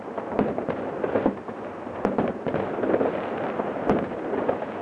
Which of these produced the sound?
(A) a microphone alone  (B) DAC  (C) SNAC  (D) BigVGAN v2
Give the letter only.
A